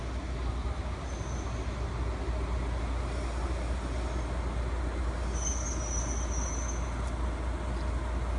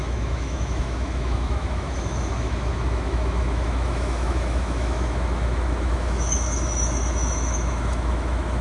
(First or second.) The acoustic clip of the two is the first